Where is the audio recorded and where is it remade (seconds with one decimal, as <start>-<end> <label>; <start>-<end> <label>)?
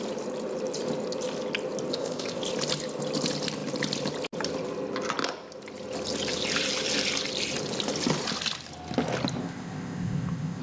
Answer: 0.0-1.9 recorded; 1.9-2.4 remade; 2.4-9.4 recorded; 9.4-10.6 remade